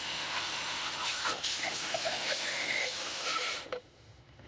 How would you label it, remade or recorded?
remade